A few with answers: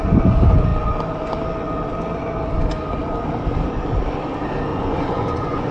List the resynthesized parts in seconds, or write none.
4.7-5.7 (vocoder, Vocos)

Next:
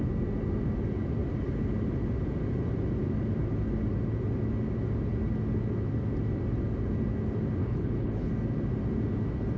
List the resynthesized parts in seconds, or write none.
7.6-8.3 (codec, HILCodec)

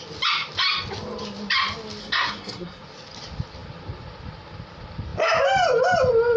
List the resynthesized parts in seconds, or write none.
2.0-2.8 (codec, SNAC)

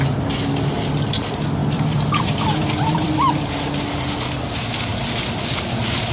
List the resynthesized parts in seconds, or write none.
1.6-3.1 (vocoder, BigVGAN v2)

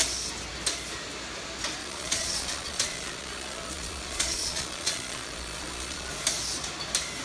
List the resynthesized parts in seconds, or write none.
1.8-6.1 (vocoder, Vocos)